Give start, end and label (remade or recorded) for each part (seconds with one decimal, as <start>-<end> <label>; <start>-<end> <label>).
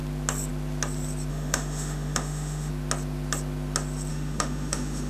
0.0-1.3 recorded; 1.3-2.7 remade; 2.7-4.1 recorded; 4.1-5.1 remade